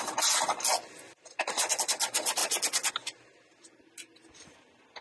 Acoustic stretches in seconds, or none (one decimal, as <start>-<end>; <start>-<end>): 0.0-5.0